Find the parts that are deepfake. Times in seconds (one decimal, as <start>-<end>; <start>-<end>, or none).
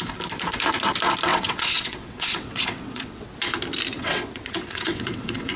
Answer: 1.3-3.3; 3.9-5.6